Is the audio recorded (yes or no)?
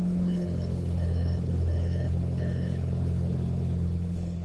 no